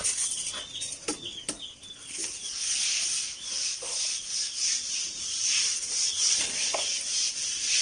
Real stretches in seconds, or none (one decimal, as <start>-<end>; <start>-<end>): 0.0-4.1; 6.6-7.8